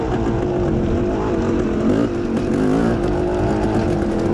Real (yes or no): yes